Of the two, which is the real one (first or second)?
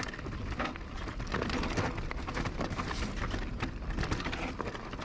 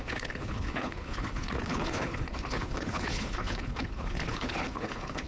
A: first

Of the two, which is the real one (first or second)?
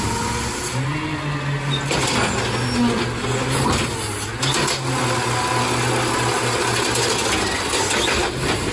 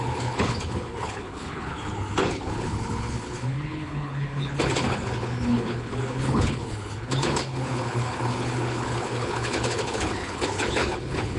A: first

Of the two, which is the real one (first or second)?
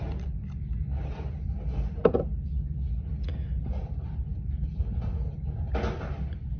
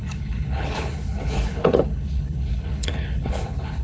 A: first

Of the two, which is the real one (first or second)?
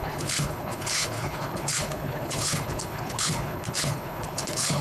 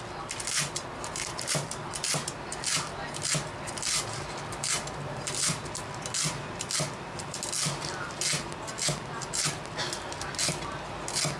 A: second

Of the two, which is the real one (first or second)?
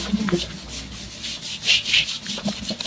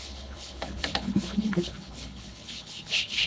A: first